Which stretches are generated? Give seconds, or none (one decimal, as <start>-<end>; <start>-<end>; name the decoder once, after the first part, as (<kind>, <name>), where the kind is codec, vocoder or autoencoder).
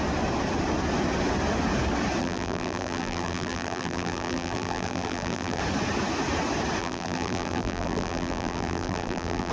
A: 2.2-5.6 (vocoder, BigVGAN v2); 6.8-9.5